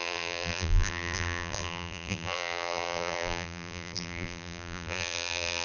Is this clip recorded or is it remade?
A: remade